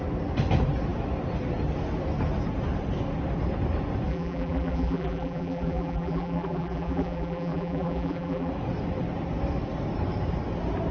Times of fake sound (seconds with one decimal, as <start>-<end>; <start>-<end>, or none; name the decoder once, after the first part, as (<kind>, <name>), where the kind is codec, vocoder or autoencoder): 4.1-8.5 (vocoder, BigVGAN v2)